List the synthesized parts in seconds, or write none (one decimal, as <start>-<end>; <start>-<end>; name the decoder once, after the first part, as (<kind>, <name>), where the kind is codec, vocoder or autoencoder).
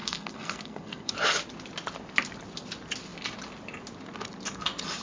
0.0-1.1 (codec, SNAC)